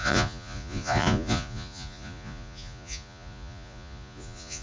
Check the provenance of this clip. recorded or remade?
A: remade